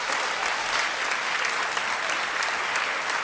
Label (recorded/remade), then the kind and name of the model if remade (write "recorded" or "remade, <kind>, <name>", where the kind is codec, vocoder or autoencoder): recorded